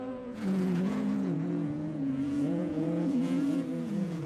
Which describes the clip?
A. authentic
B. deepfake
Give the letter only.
B